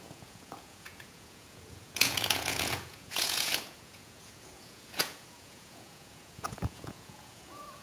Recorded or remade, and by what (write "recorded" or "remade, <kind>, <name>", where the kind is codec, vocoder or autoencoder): remade, vocoder, Vocos